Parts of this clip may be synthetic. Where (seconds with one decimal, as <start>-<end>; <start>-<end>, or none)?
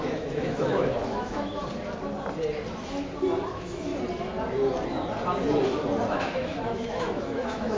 0.0-1.6; 3.5-3.9; 6.1-7.8